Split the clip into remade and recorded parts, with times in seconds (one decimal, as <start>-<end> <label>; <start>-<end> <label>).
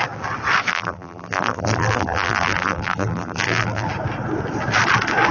0.0-0.7 recorded; 0.7-3.9 remade; 3.9-5.3 recorded